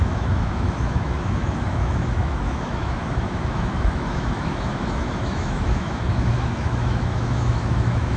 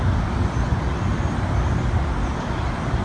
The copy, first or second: first